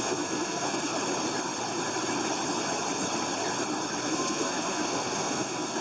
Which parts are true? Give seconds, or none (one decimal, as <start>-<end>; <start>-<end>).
0.9-4.0